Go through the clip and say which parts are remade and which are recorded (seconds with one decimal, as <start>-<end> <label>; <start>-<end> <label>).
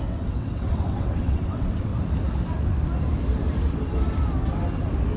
0.0-1.9 remade; 1.9-5.2 recorded